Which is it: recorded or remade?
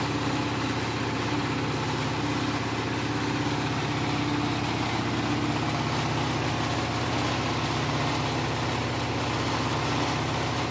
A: recorded